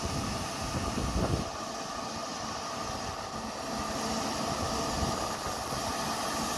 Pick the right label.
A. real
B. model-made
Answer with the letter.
A